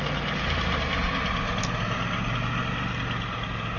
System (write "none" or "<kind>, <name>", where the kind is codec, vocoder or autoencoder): none